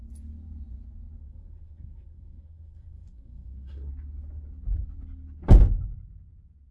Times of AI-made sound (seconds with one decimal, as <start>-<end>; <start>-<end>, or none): 1.2-3.9